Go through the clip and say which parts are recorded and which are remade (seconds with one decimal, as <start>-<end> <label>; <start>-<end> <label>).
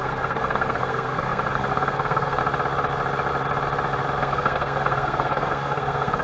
0.0-2.4 remade; 2.4-4.2 recorded; 4.2-6.2 remade